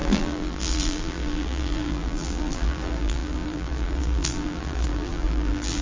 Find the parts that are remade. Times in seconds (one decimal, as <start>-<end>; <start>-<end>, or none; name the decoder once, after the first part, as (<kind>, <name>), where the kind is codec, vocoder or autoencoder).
0.0-5.8 (vocoder, BigVGAN v2)